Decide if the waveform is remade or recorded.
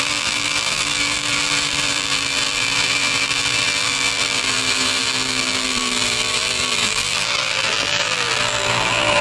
remade